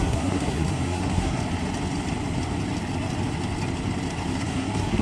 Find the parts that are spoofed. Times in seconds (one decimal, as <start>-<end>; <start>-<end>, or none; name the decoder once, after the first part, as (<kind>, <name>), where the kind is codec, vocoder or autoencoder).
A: 0.0-1.4 (codec, SNAC); 4.4-5.0